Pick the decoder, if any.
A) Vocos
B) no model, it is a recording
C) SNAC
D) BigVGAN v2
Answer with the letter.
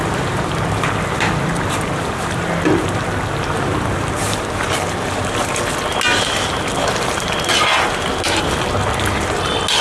B